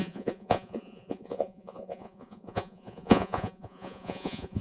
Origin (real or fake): fake